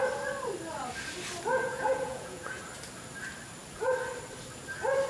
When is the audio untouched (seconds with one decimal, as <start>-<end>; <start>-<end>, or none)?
0.0-1.5; 2.6-5.1